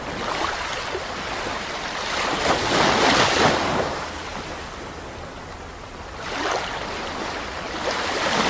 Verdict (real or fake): real